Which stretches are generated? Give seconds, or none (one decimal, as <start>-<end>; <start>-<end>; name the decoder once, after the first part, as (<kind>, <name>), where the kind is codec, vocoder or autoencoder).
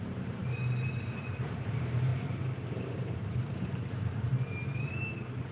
0.0-2.1 (vocoder, BigVGAN v2); 2.7-4.3